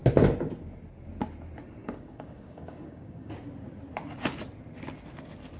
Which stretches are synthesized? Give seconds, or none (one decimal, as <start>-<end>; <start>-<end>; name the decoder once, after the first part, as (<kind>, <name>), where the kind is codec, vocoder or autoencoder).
1.8-3.3 (codec, DAC)